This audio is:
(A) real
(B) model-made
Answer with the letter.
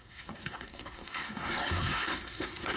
B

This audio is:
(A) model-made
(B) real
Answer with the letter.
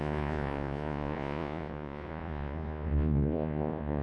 A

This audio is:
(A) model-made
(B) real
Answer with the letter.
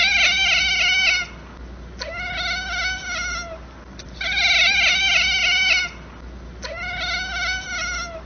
B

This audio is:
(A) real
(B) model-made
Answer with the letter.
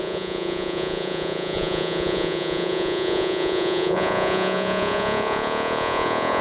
B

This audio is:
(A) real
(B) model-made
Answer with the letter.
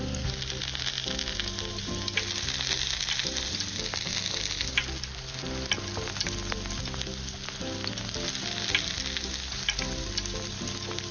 A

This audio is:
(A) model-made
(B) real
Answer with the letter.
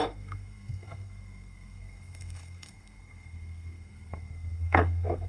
A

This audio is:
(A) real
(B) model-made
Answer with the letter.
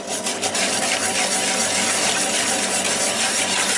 A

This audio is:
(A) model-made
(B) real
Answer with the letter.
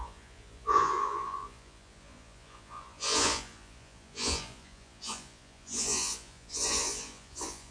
A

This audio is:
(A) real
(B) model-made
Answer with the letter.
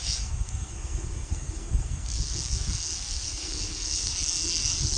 B